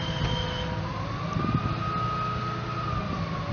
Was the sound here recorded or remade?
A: recorded